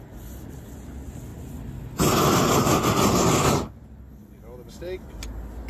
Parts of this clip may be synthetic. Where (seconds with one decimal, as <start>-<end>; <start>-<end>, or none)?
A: none